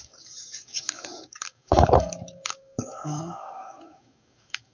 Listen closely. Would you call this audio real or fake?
fake